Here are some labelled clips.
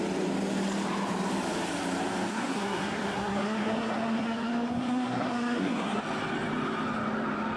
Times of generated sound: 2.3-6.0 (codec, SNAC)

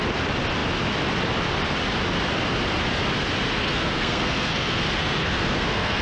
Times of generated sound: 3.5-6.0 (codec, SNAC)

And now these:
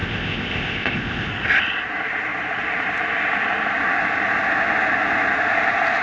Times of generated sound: 0.0-1.3 (codec, ZipCodec)

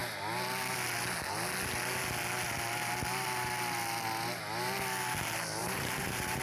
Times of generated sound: 5.6-6.4 (vocoder, BigVGAN v2)

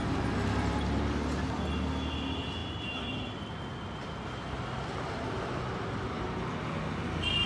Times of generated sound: none